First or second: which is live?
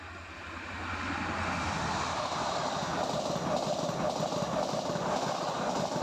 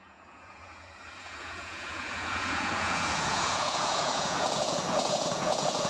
first